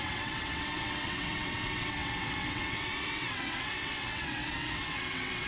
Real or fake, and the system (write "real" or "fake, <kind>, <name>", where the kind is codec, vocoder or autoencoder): fake, vocoder, WaveNeXt